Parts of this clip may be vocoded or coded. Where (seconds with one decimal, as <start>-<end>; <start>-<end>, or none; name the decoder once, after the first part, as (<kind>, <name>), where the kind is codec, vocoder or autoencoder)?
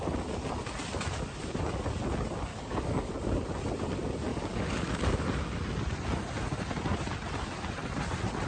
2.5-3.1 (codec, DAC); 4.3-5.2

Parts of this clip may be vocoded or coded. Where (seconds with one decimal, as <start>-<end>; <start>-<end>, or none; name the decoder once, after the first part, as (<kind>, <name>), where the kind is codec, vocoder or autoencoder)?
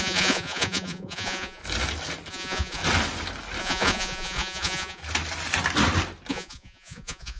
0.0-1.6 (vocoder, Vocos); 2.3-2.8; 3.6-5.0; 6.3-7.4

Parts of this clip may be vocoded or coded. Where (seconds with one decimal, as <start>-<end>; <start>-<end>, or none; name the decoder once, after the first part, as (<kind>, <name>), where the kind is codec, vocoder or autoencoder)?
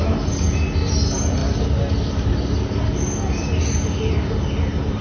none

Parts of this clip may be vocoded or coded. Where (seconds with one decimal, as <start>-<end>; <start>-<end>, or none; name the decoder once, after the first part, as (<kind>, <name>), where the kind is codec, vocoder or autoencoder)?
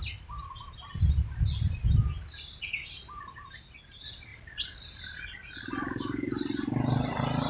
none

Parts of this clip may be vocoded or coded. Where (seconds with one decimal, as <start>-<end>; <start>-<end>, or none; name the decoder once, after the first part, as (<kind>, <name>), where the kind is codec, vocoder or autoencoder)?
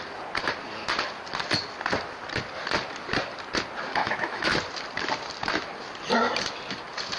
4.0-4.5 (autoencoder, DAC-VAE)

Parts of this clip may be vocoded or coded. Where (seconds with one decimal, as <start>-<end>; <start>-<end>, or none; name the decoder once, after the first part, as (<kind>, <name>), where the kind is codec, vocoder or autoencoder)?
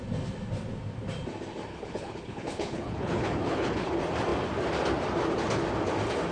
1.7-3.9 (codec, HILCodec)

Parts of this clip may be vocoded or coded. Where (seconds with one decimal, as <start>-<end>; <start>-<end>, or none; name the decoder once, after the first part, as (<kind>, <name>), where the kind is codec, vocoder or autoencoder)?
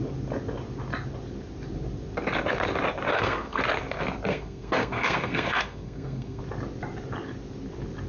3.1-3.6 (codec, SNAC); 4.3-6.4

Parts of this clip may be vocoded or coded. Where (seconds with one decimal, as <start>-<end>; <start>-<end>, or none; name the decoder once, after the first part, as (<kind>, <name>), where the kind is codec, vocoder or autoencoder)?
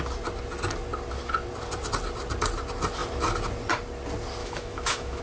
4.4-5.2 (autoencoder, DAC-VAE)